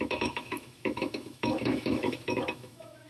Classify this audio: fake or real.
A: fake